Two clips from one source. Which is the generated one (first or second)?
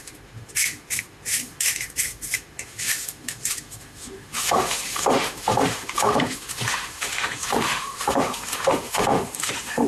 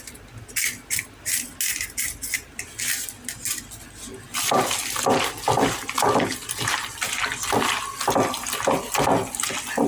first